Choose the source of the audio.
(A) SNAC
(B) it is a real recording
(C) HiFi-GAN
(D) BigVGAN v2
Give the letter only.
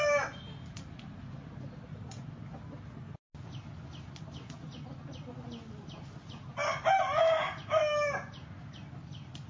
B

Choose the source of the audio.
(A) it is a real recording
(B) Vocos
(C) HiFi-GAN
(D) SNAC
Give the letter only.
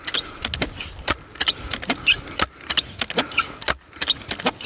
A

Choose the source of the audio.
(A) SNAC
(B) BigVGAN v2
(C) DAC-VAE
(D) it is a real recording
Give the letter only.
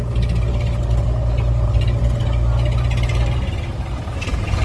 D